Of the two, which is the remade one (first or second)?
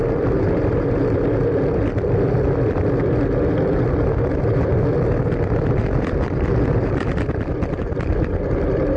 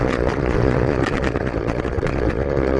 second